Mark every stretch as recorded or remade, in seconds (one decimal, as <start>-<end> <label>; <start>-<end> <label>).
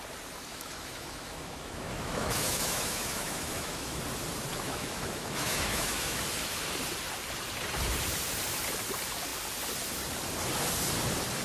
0.0-0.5 recorded; 0.5-4.0 remade; 4.0-4.5 recorded; 4.5-6.2 remade; 6.2-11.4 recorded